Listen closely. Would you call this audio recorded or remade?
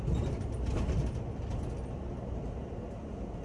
recorded